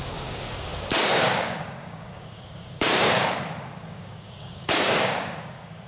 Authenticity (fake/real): fake